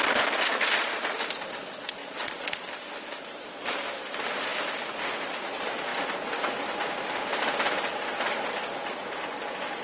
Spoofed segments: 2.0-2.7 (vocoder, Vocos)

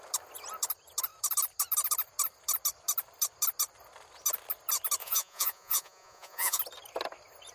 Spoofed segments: 5.0-6.6 (vocoder, Vocos)

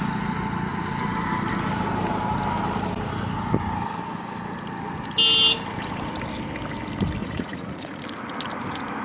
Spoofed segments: 7.2-8.0 (vocoder, Vocos)

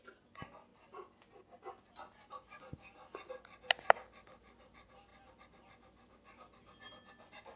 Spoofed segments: none

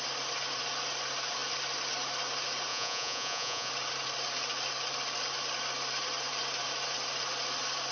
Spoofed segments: 2.7-3.7 (vocoder, Vocos)

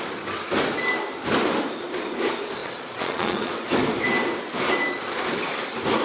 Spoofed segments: 2.6-3.5 (vocoder, Vocos)